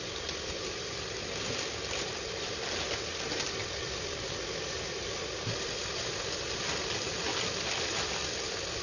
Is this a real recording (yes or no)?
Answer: yes